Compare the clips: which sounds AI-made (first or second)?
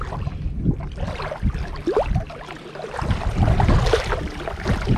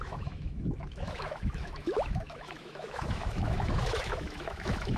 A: second